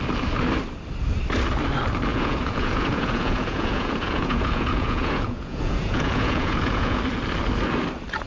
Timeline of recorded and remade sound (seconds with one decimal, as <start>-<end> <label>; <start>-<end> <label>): 0.0-2.1 recorded; 2.1-7.0 remade; 7.0-8.3 recorded